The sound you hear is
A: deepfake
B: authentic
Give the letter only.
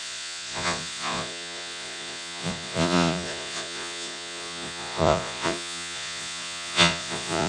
A